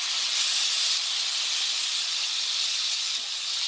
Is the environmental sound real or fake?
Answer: real